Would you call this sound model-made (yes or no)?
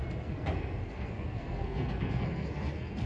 yes